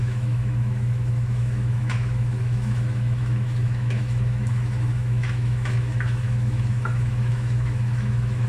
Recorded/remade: remade